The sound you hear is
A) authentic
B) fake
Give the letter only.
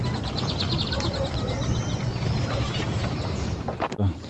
A